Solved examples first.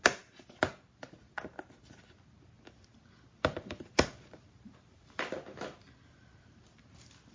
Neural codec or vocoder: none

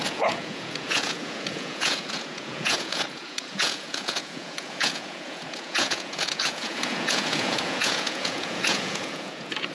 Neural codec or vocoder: vocoder, Vocos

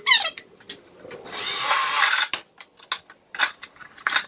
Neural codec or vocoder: none